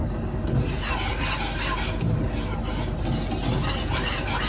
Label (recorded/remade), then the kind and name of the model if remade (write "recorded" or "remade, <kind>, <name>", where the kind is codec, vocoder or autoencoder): recorded